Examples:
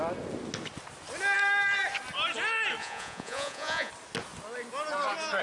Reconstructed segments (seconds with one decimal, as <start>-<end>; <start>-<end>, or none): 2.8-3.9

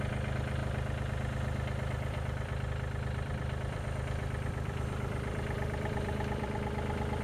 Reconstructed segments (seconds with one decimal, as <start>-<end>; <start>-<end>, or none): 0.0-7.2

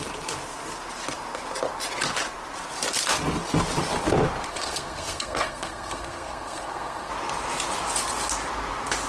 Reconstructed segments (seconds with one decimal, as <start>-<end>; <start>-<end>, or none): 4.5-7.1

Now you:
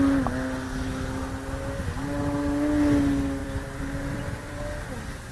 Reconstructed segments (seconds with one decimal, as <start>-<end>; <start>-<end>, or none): 3.4-4.6

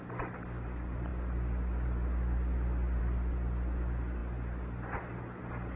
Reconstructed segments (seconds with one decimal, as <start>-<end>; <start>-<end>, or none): none

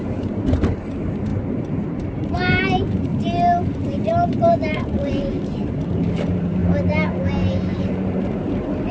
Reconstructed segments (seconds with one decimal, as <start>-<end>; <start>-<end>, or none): 0.0-6.6; 7.3-8.9

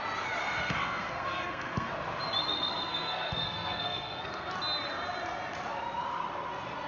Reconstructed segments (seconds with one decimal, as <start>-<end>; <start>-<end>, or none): 0.4-1.9; 2.9-4.5